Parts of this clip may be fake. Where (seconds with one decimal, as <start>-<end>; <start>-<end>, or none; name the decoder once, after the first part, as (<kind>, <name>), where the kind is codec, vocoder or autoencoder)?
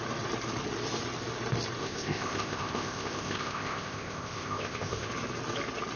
1.8-5.1 (codec, ZipCodec)